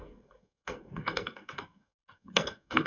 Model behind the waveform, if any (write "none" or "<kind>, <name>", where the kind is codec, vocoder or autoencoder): codec, SNAC